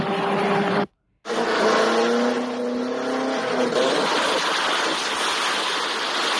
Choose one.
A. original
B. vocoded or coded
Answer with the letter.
A